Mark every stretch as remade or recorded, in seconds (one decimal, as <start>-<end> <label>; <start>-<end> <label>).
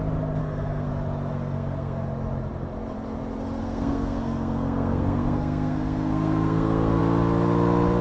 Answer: 0.0-0.4 recorded; 0.4-0.9 remade; 0.9-1.3 recorded; 1.3-2.1 remade; 2.1-3.6 recorded; 3.6-7.0 remade; 7.0-8.0 recorded